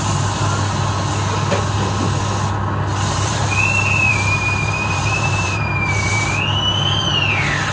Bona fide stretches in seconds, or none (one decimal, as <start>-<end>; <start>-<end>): 0.0-2.9; 3.4-4.1; 6.3-7.7